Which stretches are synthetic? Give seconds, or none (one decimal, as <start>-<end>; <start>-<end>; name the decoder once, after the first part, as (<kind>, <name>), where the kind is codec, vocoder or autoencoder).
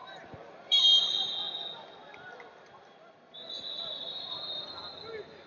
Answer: 0.0-0.8 (vocoder, BigVGAN v2); 2.0-4.7